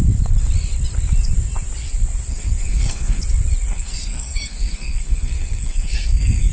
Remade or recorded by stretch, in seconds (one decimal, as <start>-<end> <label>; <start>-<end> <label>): 0.0-2.3 recorded; 2.3-3.2 remade; 3.2-3.7 recorded; 3.7-6.5 remade